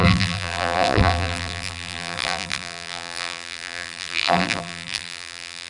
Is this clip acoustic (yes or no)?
no